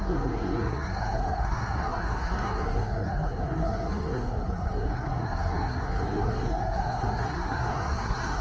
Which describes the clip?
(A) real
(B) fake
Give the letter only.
B